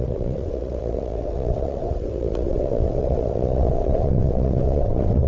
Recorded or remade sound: remade